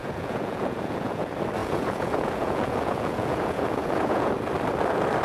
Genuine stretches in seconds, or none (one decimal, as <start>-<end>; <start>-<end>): 1.2-1.6; 4.3-5.2